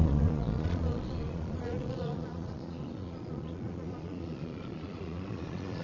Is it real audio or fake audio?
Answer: fake